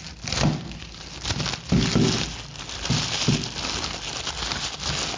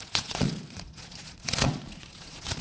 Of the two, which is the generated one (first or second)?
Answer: second